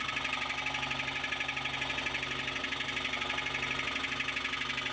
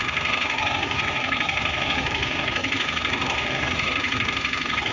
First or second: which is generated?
second